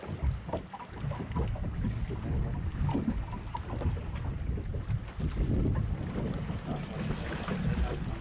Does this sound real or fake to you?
real